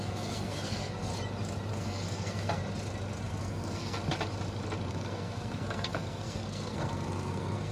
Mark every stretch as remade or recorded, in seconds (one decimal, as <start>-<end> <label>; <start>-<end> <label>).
0.0-1.1 remade; 1.1-1.7 recorded; 1.7-2.6 remade; 2.6-3.2 recorded; 3.2-4.0 remade; 4.0-4.9 recorded; 4.9-7.7 remade